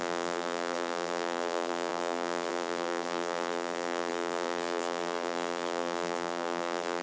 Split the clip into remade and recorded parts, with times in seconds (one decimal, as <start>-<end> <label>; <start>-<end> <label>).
0.0-7.0 remade